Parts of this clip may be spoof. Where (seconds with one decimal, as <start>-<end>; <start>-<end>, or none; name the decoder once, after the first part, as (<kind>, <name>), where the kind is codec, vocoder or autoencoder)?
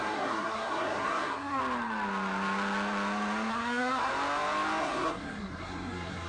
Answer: 0.0-1.6 (codec, SNAC); 3.5-4.1; 4.8-6.3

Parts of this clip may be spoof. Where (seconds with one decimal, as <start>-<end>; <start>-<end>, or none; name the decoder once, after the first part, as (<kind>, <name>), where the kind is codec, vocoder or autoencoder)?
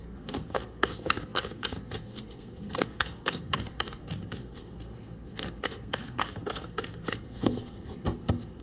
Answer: 0.0-8.6 (codec, SNAC)